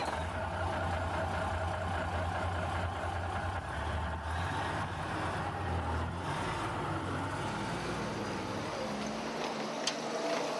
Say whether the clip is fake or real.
real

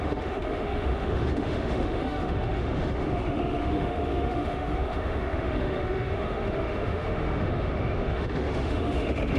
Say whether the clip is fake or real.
fake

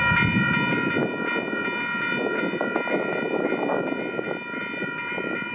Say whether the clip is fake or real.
real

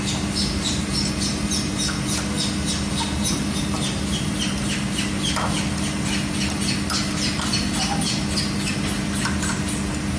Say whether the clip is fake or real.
real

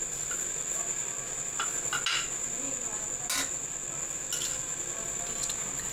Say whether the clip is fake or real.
real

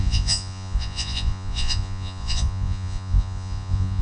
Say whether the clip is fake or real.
fake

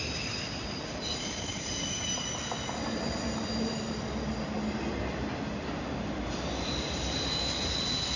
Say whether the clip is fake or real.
real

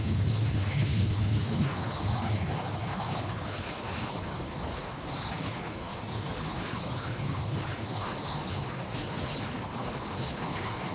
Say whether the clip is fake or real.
fake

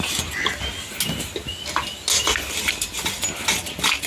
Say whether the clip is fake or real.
real